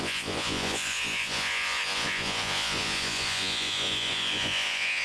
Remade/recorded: remade